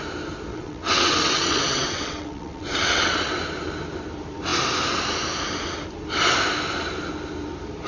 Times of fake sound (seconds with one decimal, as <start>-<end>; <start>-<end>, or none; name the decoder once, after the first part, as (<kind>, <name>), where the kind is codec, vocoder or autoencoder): 0.5-3.4 (vocoder, WaveNeXt)